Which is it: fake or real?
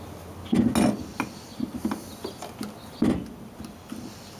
real